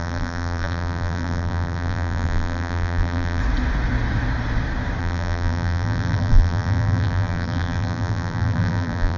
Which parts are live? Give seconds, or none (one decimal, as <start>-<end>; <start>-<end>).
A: 3.4-5.0